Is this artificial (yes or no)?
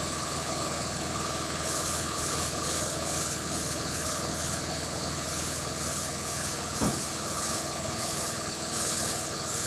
yes